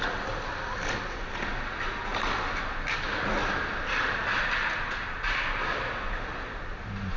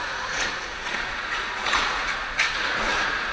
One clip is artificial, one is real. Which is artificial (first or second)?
second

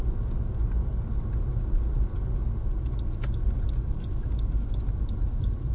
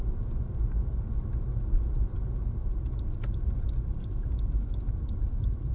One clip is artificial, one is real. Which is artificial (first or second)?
second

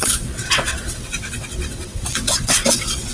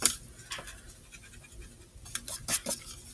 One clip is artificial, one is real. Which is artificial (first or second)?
first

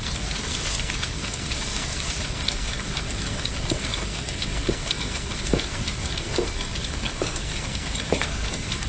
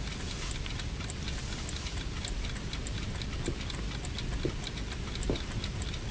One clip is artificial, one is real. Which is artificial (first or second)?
first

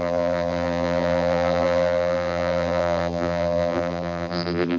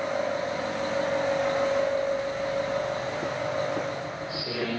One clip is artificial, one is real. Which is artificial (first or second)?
first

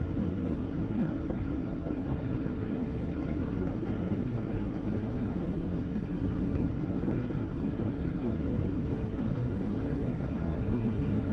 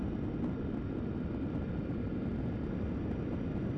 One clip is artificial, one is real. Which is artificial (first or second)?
first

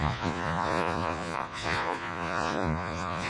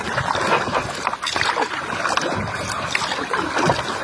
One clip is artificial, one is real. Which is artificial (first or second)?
first